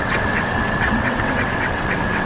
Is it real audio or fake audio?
fake